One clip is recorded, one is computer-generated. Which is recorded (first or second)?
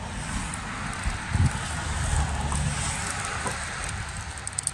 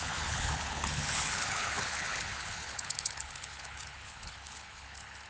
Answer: first